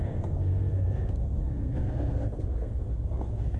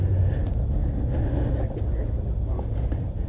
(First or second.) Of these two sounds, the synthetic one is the first